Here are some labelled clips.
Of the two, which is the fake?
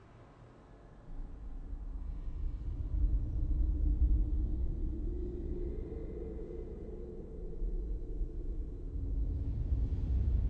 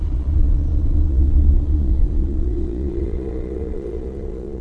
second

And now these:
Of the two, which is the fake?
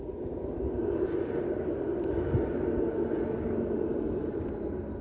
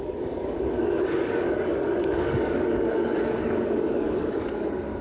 second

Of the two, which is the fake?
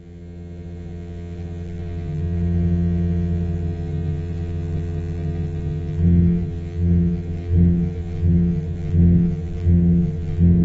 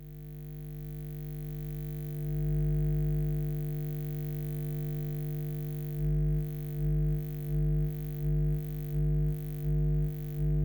first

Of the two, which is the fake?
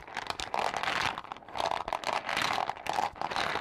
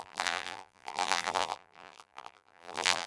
second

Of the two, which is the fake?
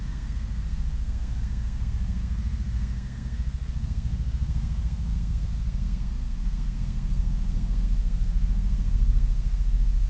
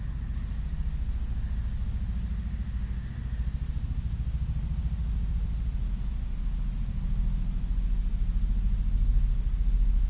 first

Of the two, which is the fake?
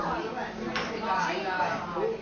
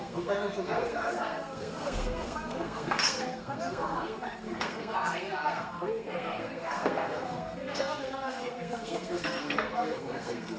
second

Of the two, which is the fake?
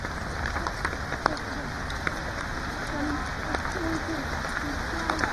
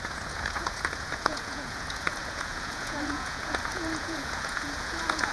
second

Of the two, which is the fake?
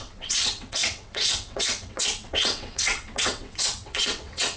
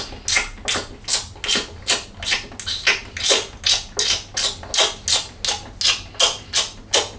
first